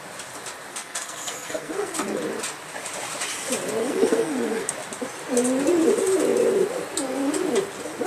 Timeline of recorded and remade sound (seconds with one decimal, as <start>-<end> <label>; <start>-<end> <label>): 0.0-0.7 recorded; 0.7-2.2 remade; 2.2-3.8 recorded; 3.8-4.7 remade; 4.7-8.1 recorded